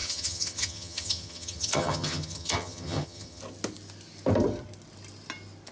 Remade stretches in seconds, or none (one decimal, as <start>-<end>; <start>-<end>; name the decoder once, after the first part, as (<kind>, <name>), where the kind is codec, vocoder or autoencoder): 0.0-3.4 (vocoder, HiFi-GAN)